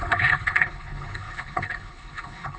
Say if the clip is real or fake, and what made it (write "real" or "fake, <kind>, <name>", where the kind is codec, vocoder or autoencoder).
fake, codec, HILCodec